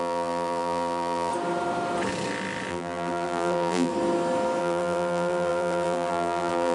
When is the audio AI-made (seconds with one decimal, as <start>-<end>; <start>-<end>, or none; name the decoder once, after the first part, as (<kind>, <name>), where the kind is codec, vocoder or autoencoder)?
0.0-1.3 (vocoder, BigVGAN v2); 2.7-3.9; 4.6-6.7